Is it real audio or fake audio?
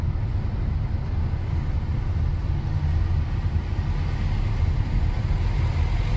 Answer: real